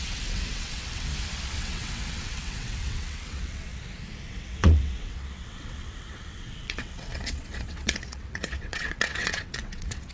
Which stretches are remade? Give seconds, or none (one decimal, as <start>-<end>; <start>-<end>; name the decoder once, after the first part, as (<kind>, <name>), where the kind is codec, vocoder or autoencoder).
0.0-1.1 (vocoder, WaveNeXt); 1.6-3.7; 4.3-10.1